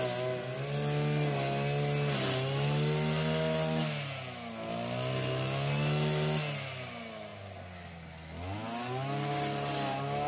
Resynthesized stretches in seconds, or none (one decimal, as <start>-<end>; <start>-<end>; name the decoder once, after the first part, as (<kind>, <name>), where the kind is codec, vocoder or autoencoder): none